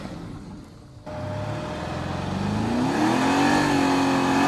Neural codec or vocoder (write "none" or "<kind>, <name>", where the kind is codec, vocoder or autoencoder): none